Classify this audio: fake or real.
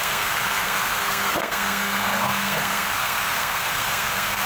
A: fake